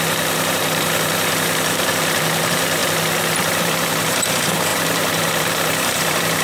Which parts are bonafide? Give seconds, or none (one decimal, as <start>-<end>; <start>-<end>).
2.8-3.6